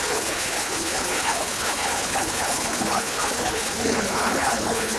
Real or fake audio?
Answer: fake